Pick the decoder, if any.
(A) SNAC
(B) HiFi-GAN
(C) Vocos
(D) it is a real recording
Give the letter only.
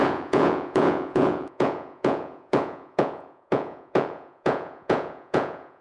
C